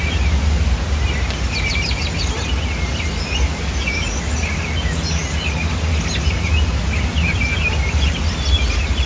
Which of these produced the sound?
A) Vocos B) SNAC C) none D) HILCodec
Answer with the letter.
C